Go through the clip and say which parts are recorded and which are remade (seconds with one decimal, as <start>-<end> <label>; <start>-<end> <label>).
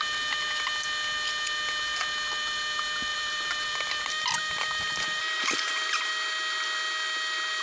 0.0-3.1 recorded; 3.1-6.1 remade; 6.1-7.6 recorded